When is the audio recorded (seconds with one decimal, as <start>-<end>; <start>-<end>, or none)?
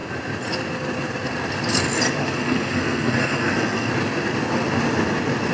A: 0.0-2.2; 3.9-5.5